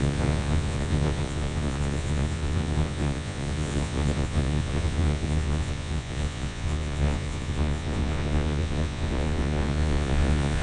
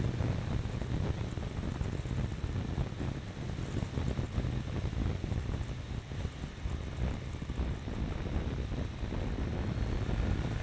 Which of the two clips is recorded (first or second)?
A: second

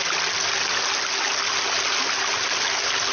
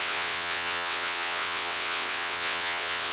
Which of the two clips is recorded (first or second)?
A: first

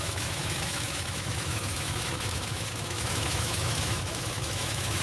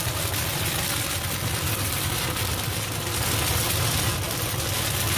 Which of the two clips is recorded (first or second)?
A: second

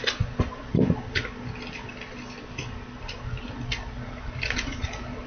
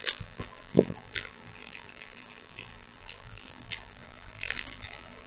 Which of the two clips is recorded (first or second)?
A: first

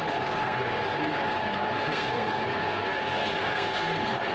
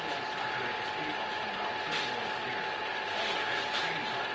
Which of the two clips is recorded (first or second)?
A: second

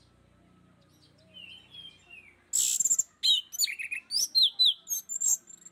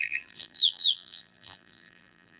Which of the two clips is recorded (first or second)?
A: first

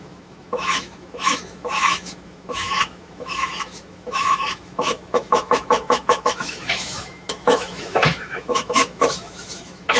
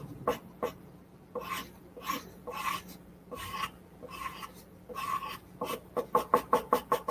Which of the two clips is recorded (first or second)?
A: second